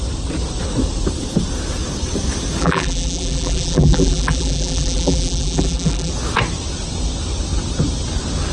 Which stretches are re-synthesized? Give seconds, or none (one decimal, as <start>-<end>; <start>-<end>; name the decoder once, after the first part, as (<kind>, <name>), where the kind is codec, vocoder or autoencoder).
2.6-6.1 (vocoder, BigVGAN v2)